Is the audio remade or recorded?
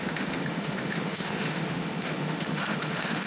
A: remade